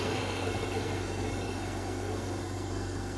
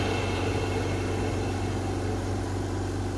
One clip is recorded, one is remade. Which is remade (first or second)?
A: first